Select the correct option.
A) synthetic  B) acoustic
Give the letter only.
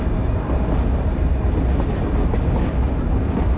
B